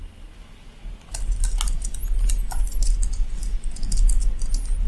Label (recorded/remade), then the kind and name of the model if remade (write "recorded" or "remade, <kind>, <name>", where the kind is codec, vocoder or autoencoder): recorded